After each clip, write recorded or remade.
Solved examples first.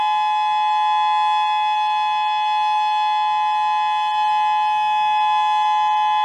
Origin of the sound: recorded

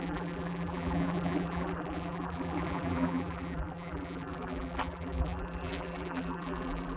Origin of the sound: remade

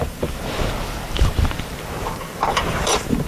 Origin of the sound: remade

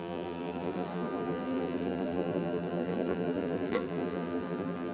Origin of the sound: remade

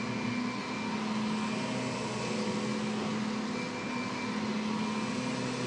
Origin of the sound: recorded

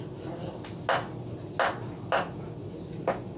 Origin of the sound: recorded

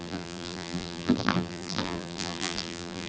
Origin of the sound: remade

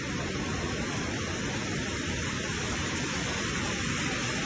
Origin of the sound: remade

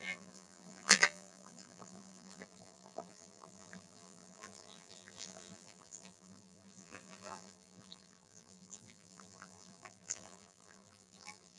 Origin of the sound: remade